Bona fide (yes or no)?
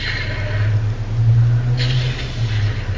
yes